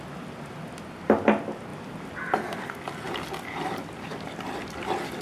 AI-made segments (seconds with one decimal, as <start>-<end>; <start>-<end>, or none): none